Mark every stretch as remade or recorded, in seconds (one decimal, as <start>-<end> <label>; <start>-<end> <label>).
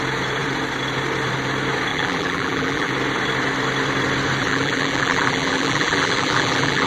0.0-1.9 recorded; 1.9-2.9 remade; 2.9-4.4 recorded; 4.4-6.9 remade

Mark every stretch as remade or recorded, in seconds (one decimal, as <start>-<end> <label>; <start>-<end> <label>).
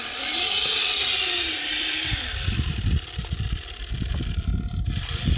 0.0-5.4 recorded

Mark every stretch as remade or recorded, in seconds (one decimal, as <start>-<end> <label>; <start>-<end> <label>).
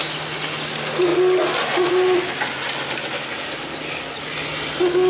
0.0-5.1 recorded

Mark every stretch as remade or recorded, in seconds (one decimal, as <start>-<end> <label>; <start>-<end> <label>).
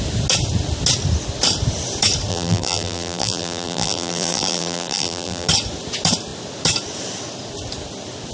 0.0-2.3 recorded; 2.3-5.5 remade; 5.5-8.3 recorded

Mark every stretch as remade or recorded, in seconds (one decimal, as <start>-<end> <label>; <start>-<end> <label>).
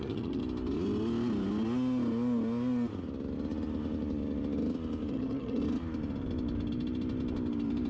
0.0-0.4 remade; 0.4-5.1 recorded; 5.1-5.6 remade; 5.6-7.9 recorded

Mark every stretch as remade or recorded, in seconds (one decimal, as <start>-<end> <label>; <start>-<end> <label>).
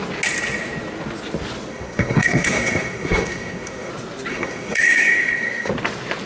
0.0-1.7 recorded; 1.7-3.9 remade; 3.9-4.3 recorded; 4.3-5.7 remade; 5.7-6.3 recorded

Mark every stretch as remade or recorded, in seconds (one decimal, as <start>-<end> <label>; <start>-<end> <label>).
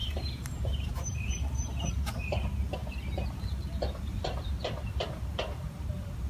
0.0-2.8 remade; 2.8-4.9 recorded; 4.9-6.3 remade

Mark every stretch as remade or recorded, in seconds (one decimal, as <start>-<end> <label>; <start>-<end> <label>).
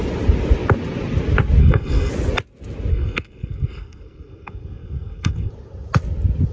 0.0-1.6 recorded; 1.6-2.1 remade; 2.1-2.9 recorded; 2.9-5.5 remade; 5.5-6.5 recorded